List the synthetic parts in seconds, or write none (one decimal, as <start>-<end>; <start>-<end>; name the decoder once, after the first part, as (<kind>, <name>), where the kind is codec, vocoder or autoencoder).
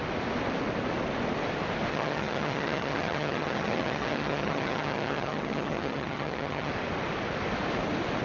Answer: 1.9-6.7 (vocoder, HiFi-GAN)